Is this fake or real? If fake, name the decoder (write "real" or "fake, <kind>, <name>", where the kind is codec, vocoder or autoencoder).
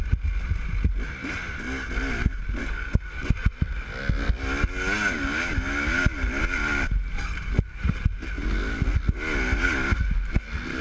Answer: real